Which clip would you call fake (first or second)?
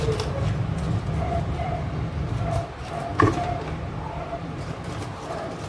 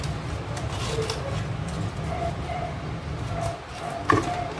first